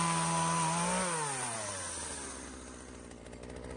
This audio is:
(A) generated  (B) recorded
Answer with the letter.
B